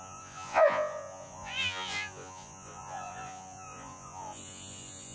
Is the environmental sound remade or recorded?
remade